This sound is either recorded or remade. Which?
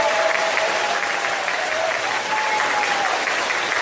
recorded